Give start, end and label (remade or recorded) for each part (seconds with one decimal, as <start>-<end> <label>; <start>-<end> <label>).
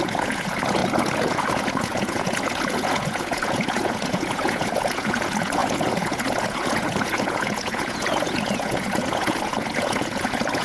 0.0-10.6 remade